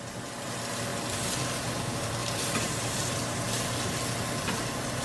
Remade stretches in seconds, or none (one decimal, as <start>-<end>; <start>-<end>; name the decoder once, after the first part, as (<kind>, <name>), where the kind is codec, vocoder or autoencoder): 2.2-3.5 (vocoder, BigVGAN v2)